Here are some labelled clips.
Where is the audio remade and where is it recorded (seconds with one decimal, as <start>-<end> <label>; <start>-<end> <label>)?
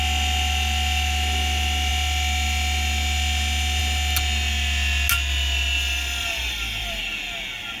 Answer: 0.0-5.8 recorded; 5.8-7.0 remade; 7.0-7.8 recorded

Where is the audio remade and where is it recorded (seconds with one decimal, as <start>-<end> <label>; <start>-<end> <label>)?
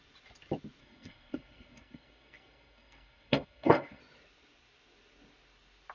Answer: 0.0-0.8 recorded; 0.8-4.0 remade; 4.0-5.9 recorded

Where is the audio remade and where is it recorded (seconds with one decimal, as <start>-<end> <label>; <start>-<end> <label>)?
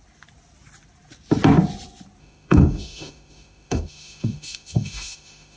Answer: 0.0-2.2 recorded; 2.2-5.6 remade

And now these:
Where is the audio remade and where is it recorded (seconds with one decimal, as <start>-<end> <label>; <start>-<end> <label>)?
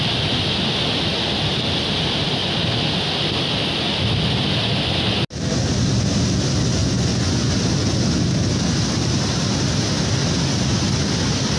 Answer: 0.0-6.8 recorded; 6.8-7.5 remade; 7.5-11.6 recorded